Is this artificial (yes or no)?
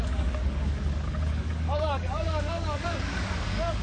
yes